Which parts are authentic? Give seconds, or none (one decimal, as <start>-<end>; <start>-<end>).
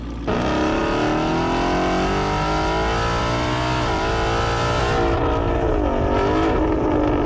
0.0-7.3